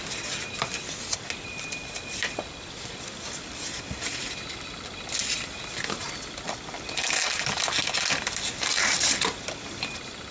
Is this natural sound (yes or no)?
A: yes